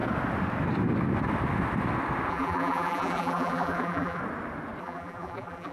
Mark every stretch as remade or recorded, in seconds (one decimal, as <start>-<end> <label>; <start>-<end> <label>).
0.0-2.3 recorded; 2.3-4.2 remade; 4.2-4.8 recorded; 4.8-5.7 remade